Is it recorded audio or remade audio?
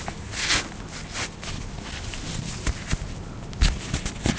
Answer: recorded